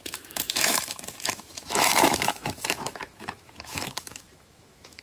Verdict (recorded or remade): remade